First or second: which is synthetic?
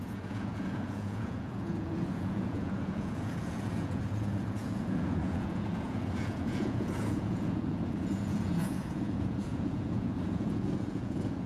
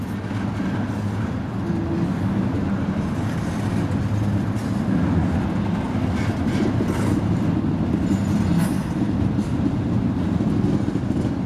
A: first